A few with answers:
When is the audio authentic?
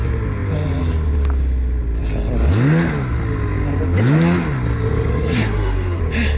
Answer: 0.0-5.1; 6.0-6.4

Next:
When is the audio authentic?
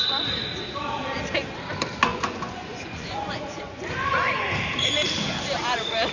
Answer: 0.0-2.1; 4.5-6.1